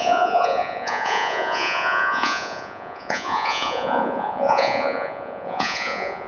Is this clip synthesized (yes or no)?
yes